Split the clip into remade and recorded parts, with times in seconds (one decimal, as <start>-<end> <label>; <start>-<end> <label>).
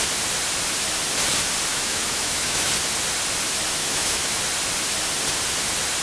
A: 0.0-1.7 recorded; 1.7-2.7 remade; 2.7-3.8 recorded; 3.8-4.4 remade; 4.4-6.0 recorded